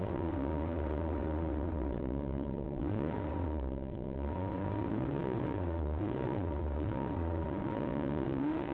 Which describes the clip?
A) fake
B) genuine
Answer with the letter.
A